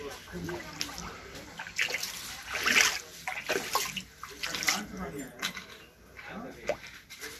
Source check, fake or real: real